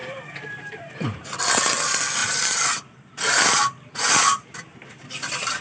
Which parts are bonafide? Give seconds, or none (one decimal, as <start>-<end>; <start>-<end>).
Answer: 1.4-2.2; 5.1-5.6